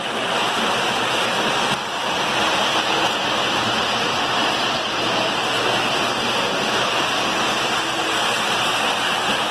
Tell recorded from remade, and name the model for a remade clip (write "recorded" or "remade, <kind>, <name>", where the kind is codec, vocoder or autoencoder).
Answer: recorded